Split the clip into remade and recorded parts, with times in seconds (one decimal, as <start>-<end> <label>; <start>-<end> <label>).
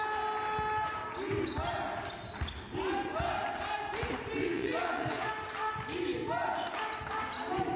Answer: 0.0-4.4 recorded; 4.4-5.3 remade; 5.3-7.8 recorded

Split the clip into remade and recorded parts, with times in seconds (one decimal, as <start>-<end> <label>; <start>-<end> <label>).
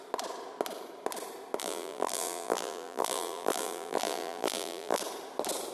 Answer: 0.0-1.6 recorded; 1.6-5.0 remade; 5.0-5.7 recorded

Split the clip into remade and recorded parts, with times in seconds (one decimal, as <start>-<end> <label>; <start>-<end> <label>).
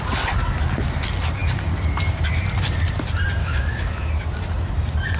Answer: 0.0-3.4 recorded; 3.4-4.1 remade; 4.1-5.2 recorded